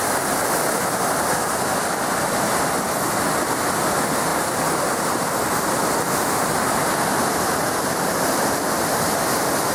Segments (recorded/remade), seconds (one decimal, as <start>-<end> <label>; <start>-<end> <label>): 0.0-9.7 recorded